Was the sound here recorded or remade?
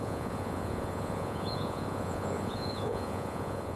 remade